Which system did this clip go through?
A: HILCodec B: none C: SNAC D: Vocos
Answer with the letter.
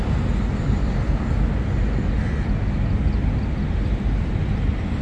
B